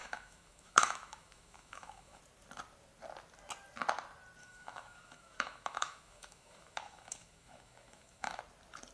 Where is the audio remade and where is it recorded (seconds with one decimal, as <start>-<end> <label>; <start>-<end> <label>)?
0.0-2.2 remade; 2.2-4.4 recorded; 4.4-8.4 remade; 8.4-8.9 recorded